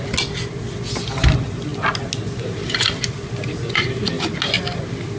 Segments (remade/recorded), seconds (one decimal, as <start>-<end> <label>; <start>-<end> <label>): 0.0-5.2 recorded